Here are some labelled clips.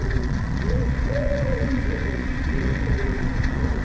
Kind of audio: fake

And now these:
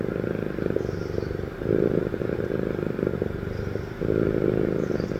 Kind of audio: real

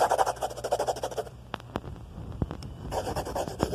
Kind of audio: real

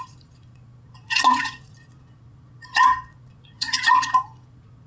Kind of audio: fake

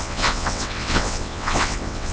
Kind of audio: fake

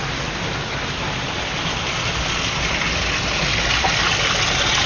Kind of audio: real